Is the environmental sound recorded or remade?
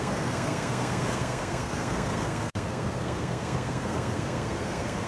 remade